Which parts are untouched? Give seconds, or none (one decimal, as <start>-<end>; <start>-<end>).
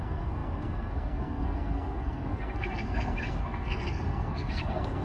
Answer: none